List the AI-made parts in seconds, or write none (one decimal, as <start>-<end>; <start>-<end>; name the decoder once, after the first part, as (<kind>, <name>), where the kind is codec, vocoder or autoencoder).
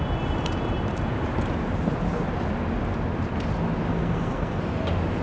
3.9-4.6 (codec, SNAC)